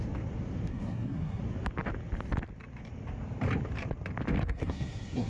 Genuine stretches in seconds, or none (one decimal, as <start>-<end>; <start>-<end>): 0.0-0.7; 1.4-4.4